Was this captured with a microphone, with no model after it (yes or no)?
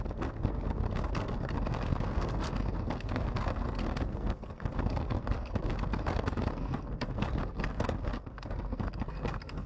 no